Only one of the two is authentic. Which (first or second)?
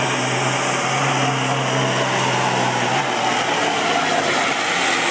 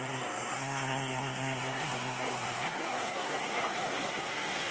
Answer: first